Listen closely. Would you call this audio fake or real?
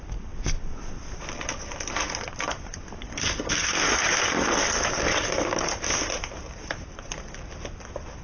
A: real